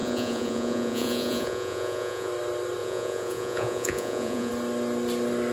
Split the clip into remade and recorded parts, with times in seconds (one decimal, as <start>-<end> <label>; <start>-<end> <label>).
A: 0.0-2.3 remade; 2.3-2.8 recorded; 2.8-4.5 remade; 4.5-5.5 recorded